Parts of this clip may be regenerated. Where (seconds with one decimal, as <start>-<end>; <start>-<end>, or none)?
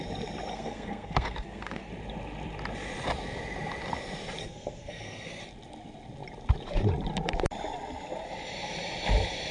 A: 0.5-1.9; 4.4-5.4